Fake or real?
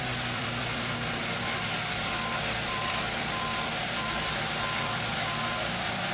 fake